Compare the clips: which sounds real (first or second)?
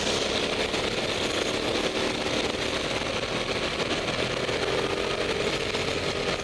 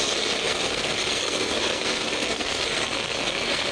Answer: first